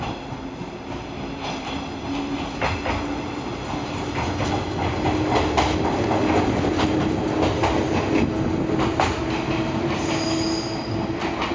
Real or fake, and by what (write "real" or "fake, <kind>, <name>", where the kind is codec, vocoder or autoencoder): real